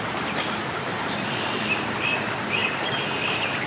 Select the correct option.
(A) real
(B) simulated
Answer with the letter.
A